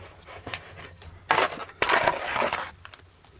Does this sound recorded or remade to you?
recorded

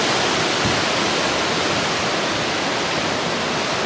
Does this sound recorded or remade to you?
recorded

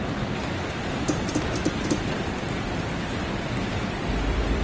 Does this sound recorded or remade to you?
recorded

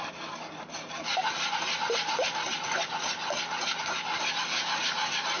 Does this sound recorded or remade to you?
recorded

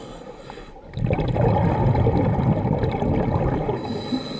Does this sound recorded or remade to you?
recorded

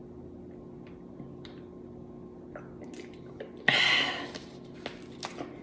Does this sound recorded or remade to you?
recorded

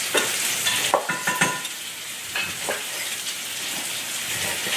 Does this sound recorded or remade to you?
recorded